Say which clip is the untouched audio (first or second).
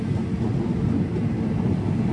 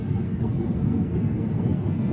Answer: first